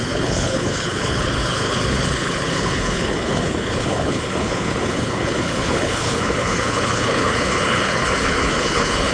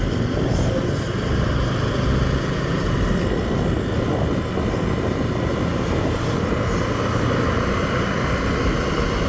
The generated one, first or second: first